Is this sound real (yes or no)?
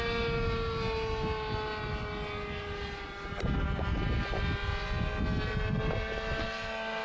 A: yes